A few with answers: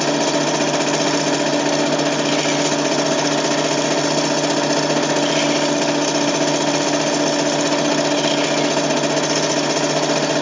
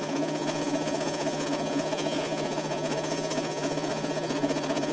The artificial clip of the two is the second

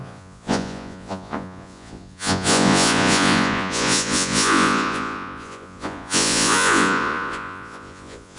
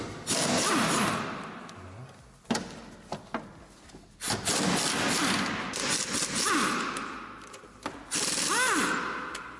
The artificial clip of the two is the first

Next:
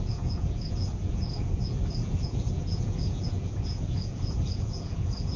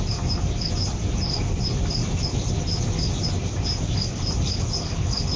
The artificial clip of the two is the first